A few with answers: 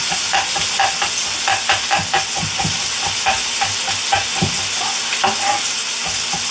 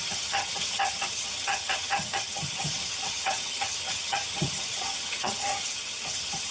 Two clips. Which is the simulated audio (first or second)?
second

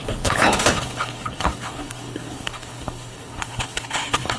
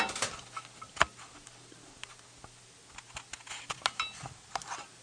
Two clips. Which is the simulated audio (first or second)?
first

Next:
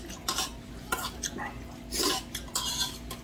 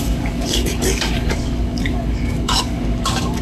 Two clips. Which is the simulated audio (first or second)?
second